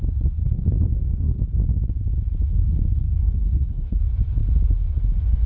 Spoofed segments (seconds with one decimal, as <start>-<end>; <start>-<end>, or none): 0.4-1.4; 2.5-4.0